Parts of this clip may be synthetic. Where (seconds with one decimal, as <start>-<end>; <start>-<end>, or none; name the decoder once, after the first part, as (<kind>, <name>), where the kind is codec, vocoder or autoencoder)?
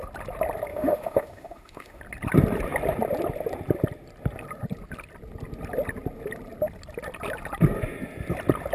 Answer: 0.7-2.0 (autoencoder, DAC-VAE)